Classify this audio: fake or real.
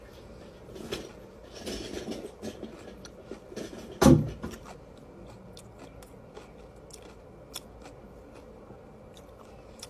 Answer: real